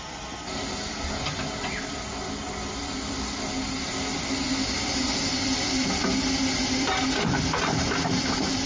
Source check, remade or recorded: recorded